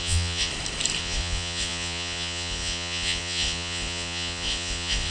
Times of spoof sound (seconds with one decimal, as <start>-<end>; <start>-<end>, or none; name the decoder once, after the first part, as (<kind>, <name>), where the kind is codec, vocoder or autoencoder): 0.0-0.5 (vocoder, Vocos); 1.0-5.1